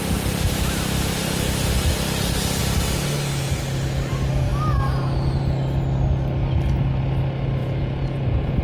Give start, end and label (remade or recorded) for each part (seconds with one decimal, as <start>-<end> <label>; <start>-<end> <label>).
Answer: 0.0-7.6 recorded; 7.6-8.6 remade

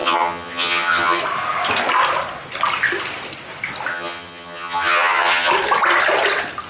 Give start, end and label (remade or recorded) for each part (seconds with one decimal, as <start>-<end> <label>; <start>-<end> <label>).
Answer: 0.0-1.2 remade; 1.2-3.9 recorded; 3.9-5.5 remade; 5.5-6.7 recorded